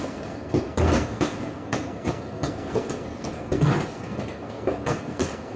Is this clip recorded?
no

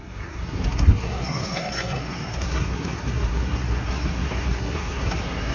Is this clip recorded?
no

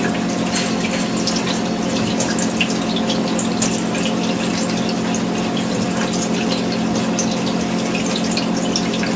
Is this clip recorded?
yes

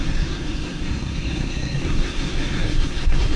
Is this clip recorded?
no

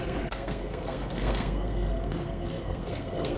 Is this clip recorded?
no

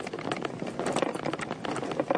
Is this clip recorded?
yes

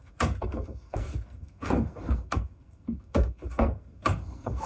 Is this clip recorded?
no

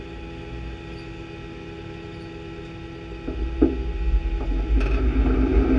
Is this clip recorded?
yes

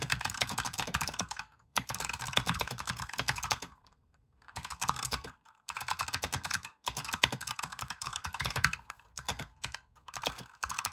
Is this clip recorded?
no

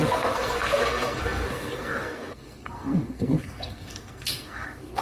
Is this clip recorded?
no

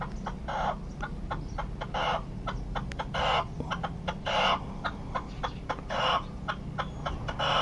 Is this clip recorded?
yes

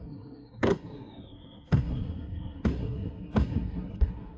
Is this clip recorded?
no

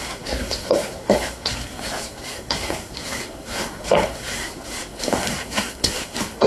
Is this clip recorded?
no